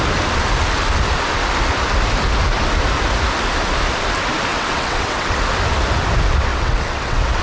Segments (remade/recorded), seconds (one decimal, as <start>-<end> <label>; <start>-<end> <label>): 0.0-4.5 recorded; 4.5-5.4 remade; 5.4-6.5 recorded; 6.5-7.4 remade